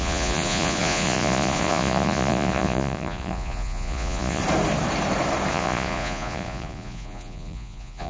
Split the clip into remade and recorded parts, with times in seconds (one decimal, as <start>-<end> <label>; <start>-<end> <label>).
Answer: 0.0-4.4 remade; 4.4-5.5 recorded; 5.5-8.1 remade